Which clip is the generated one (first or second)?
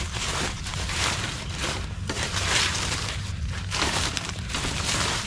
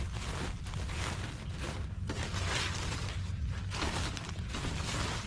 first